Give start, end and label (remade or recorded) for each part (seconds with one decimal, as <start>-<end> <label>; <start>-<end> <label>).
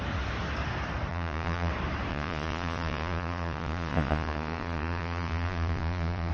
0.0-1.1 recorded; 1.1-1.7 remade; 1.7-2.1 recorded; 2.1-6.3 remade